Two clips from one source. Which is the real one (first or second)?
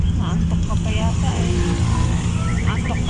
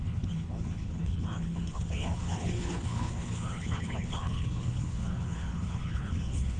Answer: first